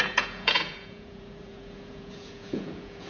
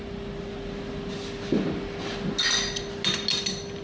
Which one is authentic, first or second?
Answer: second